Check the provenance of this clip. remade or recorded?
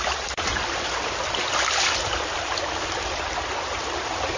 recorded